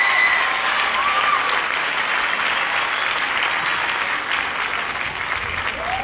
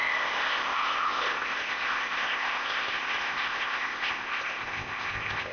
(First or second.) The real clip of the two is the first